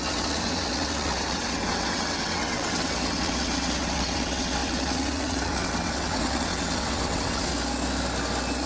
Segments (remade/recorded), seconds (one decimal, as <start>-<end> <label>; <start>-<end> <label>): 0.0-7.5 remade; 7.5-8.7 recorded